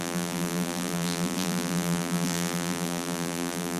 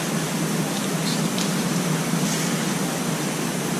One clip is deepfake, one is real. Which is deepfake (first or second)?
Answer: first